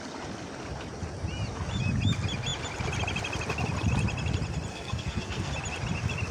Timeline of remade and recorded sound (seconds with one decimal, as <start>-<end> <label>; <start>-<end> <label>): 0.0-4.7 recorded; 4.7-5.5 remade; 5.5-6.3 recorded